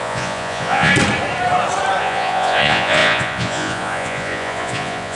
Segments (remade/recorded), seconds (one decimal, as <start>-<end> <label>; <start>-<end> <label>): 0.0-0.9 remade; 0.9-2.0 recorded; 2.0-5.2 remade